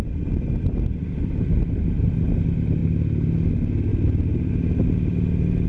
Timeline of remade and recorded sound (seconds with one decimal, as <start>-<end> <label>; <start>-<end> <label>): 0.0-3.9 recorded; 3.9-4.5 remade; 4.5-5.7 recorded